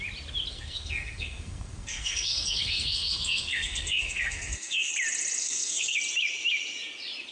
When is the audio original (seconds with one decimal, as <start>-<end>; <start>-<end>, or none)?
0.0-0.5; 4.9-5.4; 6.0-7.3